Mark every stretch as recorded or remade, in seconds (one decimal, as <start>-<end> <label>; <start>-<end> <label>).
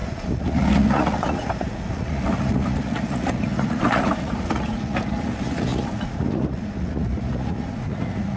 0.0-8.4 remade